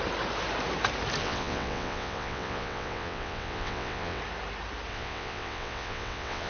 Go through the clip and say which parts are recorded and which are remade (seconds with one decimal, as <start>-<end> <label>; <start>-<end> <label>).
0.0-1.2 recorded; 1.2-4.2 remade; 4.2-4.9 recorded; 4.9-6.5 remade